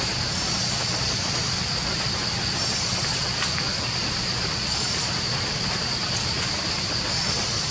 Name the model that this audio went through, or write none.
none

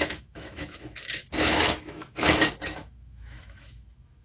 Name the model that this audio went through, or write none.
autoencoder, DAC-VAE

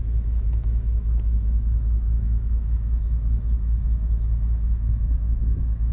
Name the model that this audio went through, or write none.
autoencoder, DAC-VAE